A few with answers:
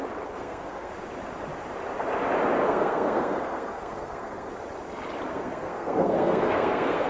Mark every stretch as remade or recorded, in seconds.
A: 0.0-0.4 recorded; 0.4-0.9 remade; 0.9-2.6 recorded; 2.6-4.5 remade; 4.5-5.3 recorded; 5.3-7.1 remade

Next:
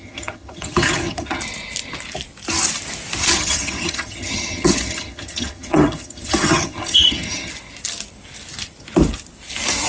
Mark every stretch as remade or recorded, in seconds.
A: 0.0-1.4 remade; 1.4-3.3 recorded; 3.3-7.5 remade; 7.5-9.9 recorded

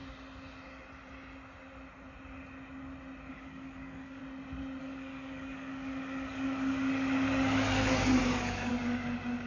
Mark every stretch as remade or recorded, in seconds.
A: 0.0-3.3 recorded; 3.3-4.2 remade; 4.2-4.8 recorded; 4.8-9.5 remade

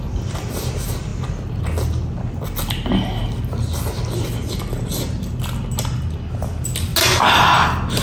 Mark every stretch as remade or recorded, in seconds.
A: 0.0-8.0 recorded